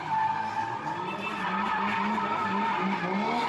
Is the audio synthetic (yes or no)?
no